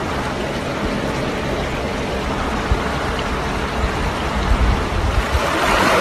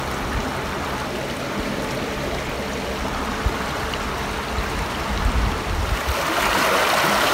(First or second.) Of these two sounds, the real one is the second